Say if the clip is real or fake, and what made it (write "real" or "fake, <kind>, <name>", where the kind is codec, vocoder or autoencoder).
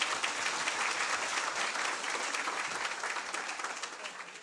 real